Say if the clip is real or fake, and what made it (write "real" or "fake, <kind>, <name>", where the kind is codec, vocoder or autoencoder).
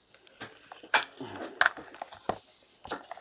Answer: real